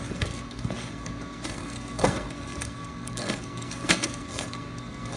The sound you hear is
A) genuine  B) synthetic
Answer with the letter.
B